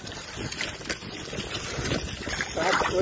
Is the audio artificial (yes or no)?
no